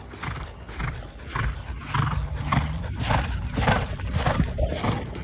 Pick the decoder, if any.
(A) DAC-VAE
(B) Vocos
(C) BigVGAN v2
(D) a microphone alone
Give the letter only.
D